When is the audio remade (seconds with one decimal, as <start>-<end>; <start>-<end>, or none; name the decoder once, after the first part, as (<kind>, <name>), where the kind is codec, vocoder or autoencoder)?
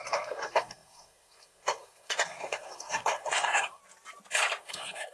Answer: 0.0-3.8 (codec, SNAC); 4.6-5.1